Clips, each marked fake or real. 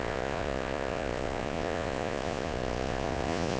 fake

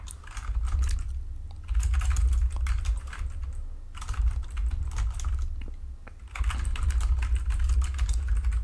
real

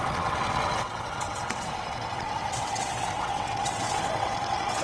fake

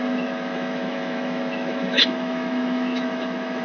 fake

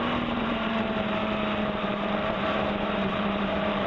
fake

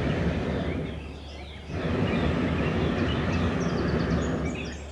real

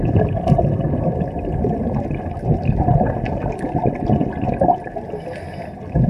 real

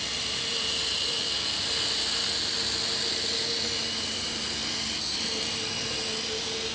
real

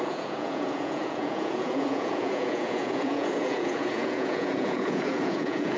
fake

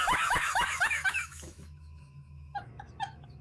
fake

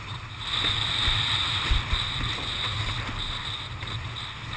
real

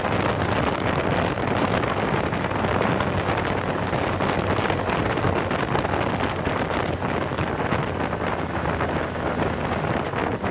real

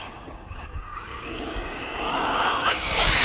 fake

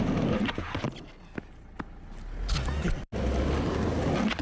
real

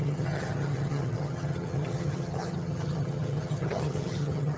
fake